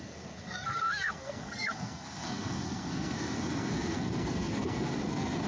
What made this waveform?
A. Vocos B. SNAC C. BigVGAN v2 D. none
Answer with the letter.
B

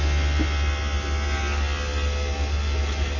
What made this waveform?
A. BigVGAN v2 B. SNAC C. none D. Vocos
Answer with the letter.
C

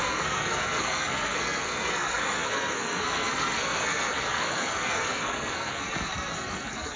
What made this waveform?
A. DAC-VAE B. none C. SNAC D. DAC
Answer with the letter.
C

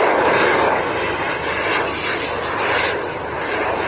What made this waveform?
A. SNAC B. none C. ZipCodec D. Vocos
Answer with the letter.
B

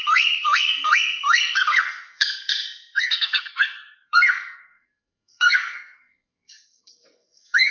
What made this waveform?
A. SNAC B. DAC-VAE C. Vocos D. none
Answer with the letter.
A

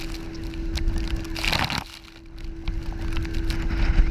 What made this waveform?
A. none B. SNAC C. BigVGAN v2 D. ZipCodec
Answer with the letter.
A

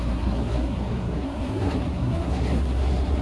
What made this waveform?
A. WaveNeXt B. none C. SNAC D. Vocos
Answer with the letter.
C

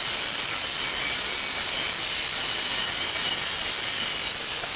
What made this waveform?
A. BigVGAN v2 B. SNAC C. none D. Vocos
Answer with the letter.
C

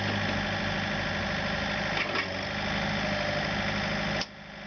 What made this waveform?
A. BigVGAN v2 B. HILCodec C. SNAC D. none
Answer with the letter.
D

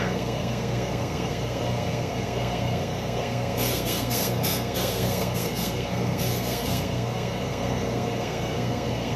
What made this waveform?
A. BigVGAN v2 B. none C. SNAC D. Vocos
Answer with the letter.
C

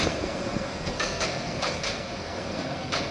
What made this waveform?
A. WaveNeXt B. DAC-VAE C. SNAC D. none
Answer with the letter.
C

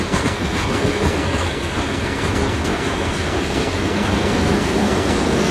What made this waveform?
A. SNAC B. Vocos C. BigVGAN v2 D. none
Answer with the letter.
A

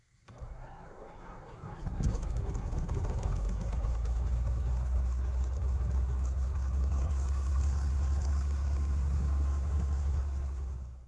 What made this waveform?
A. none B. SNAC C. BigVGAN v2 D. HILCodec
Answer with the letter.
B